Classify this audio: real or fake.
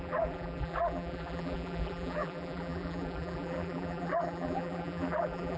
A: fake